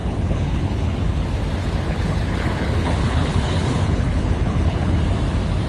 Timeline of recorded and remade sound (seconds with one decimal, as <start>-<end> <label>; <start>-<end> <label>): 0.0-1.2 remade; 1.2-1.6 recorded; 1.6-5.0 remade; 5.0-5.7 recorded